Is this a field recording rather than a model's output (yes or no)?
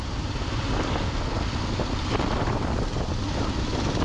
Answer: yes